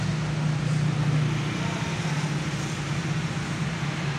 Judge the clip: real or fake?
real